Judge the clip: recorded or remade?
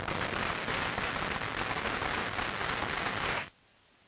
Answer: recorded